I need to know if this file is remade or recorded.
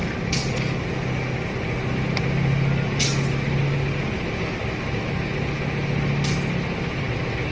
recorded